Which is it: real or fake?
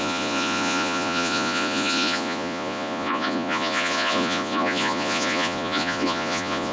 fake